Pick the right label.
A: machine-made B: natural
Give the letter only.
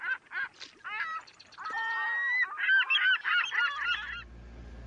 B